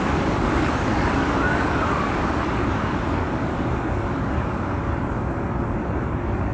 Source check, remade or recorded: remade